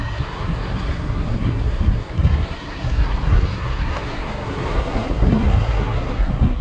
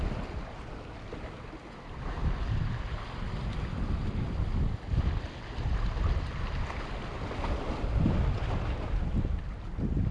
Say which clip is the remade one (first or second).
first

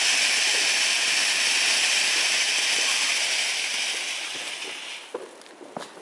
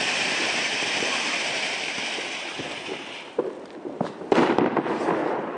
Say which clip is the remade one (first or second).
second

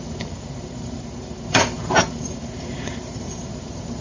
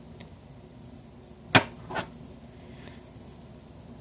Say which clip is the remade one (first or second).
first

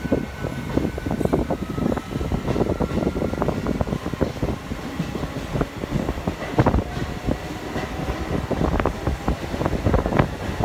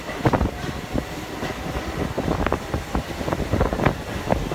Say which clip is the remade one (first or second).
second